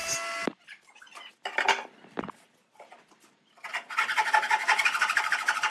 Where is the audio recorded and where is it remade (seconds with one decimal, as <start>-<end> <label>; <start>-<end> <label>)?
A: 0.0-5.7 recorded